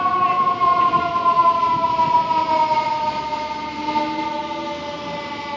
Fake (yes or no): no